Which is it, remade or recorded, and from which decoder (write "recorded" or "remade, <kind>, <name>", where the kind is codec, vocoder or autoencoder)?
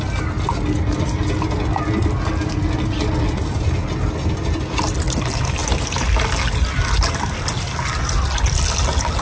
recorded